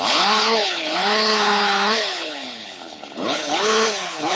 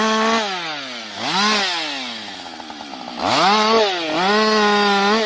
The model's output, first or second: first